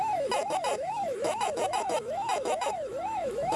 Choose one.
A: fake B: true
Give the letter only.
A